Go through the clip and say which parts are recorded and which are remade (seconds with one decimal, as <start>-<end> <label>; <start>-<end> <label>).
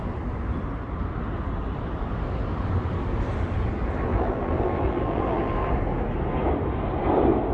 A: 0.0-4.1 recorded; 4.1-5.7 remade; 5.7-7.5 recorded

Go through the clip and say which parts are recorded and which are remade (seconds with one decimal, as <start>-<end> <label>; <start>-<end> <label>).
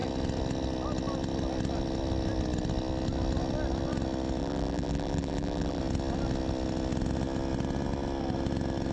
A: 0.0-4.4 recorded; 4.4-5.8 remade; 5.8-8.9 recorded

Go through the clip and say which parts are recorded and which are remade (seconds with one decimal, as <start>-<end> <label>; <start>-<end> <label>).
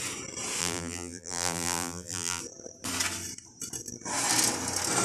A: 0.0-0.6 recorded; 0.6-2.4 remade; 2.4-5.0 recorded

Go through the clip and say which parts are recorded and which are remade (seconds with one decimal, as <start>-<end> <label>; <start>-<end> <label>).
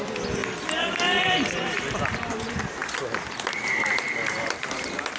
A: 0.0-0.4 recorded; 0.4-2.4 remade; 2.4-5.2 recorded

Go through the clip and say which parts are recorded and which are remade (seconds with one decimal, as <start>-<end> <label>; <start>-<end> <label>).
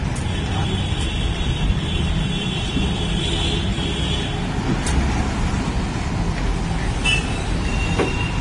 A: 0.0-3.7 remade; 3.7-7.4 recorded; 7.4-8.4 remade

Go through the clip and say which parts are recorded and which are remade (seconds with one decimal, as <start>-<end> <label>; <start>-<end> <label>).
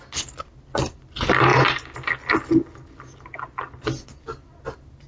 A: 0.0-5.1 recorded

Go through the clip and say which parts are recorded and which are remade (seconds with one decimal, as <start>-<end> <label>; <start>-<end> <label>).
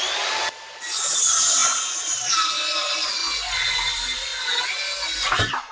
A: 0.0-3.2 remade; 3.2-3.7 recorded; 3.7-4.3 remade; 4.3-5.2 recorded; 5.2-5.7 remade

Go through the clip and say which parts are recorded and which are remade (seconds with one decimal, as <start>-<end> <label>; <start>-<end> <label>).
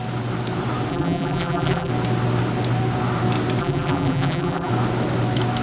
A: 0.0-0.9 recorded; 0.9-1.9 remade; 1.9-3.6 recorded; 3.6-4.7 remade; 4.7-5.6 recorded